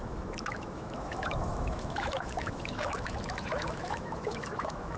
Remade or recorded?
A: remade